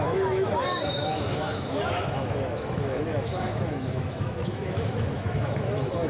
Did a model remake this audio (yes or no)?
yes